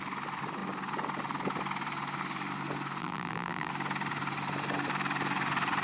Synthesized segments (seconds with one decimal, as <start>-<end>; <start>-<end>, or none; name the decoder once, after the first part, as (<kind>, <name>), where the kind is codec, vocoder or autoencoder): 3.0-3.7 (vocoder, BigVGAN v2)